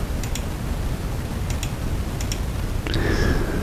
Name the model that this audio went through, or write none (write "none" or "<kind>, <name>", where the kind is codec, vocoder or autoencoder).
none